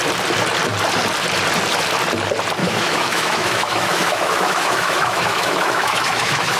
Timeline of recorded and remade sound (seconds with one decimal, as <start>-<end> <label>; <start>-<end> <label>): 0.0-2.6 recorded; 2.6-6.6 remade